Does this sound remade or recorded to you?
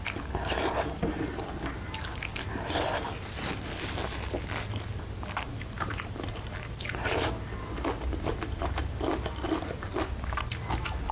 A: recorded